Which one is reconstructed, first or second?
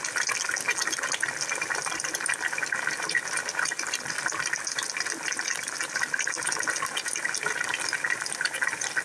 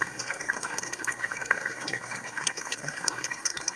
second